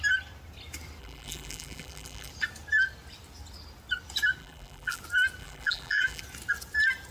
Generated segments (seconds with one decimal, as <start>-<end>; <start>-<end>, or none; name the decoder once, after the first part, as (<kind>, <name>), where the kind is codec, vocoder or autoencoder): 1.0-2.3 (vocoder, BigVGAN v2); 4.4-5.0; 5.4-6.2